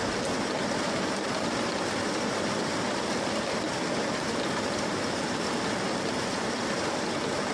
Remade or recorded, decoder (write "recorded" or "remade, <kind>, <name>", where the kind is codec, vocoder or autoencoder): recorded